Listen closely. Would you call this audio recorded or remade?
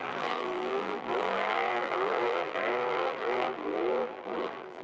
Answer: remade